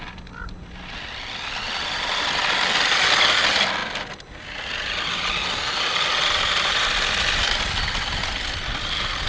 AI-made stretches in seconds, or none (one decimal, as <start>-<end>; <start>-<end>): none